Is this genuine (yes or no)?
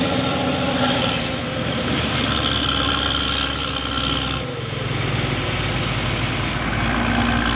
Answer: yes